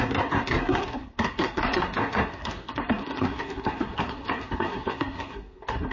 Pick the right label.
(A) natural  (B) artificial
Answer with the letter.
B